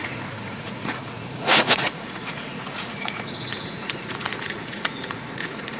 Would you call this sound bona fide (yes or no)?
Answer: no